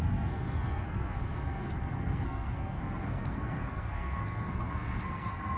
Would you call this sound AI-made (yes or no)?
yes